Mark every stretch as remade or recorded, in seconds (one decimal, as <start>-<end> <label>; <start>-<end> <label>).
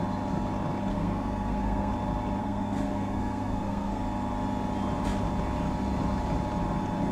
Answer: 0.0-0.9 recorded; 0.9-1.9 remade; 1.9-2.4 recorded; 2.4-4.0 remade; 4.0-7.1 recorded